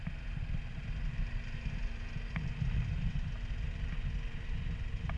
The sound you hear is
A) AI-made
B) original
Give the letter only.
B